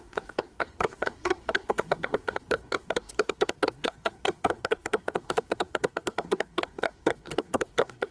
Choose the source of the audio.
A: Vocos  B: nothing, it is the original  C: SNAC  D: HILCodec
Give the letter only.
C